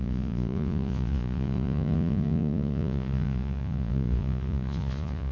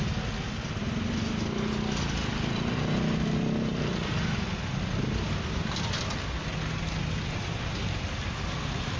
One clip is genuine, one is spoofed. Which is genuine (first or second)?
second